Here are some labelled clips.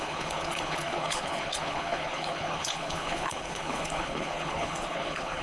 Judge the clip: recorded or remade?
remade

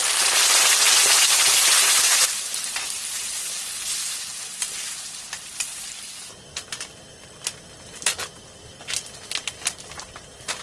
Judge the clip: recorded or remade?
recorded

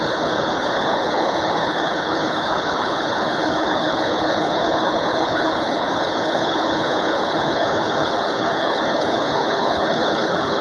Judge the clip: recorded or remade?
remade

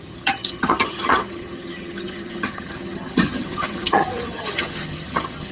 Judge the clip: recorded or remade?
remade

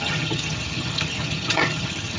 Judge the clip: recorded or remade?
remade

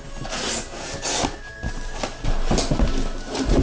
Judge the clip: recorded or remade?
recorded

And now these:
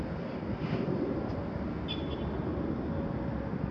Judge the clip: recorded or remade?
recorded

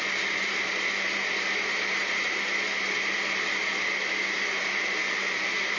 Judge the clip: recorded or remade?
recorded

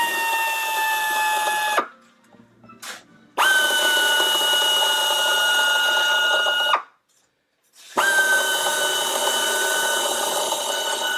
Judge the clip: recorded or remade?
recorded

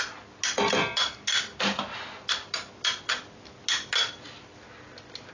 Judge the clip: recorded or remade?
recorded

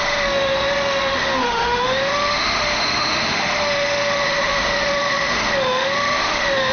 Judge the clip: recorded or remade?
remade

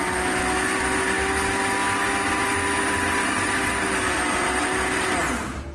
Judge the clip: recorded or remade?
recorded